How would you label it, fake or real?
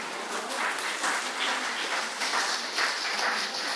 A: real